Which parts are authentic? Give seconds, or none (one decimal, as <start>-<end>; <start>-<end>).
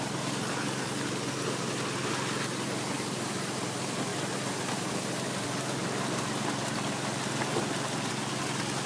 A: 0.0-8.9